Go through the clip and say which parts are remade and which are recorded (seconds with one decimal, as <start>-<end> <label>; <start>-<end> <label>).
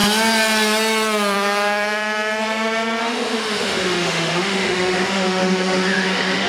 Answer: 0.0-3.0 recorded; 3.0-6.5 remade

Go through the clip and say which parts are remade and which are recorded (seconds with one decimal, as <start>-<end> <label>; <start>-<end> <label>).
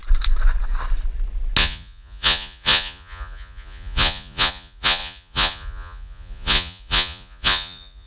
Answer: 0.0-1.6 recorded; 1.6-8.1 remade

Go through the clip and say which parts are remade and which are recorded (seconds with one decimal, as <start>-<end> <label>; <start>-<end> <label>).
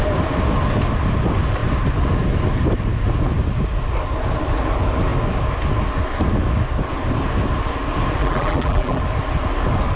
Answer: 0.0-8.2 recorded; 8.2-9.0 remade; 9.0-10.0 recorded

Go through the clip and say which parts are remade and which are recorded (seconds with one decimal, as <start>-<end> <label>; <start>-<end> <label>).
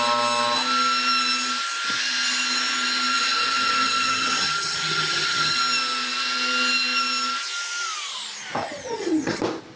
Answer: 0.0-3.1 recorded; 3.1-5.6 remade; 5.6-8.6 recorded; 8.6-9.4 remade; 9.4-9.8 recorded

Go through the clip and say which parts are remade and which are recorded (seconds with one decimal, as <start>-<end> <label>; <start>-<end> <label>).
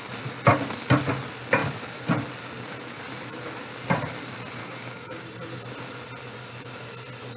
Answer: 0.0-4.6 recorded; 4.6-5.2 remade; 5.2-7.4 recorded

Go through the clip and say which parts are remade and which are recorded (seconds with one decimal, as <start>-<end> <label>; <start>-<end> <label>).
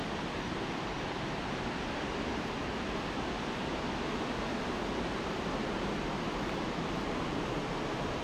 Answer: 0.0-8.2 recorded